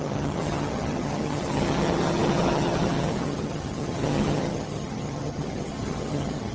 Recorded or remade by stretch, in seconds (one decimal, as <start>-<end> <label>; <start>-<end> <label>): 0.0-6.5 remade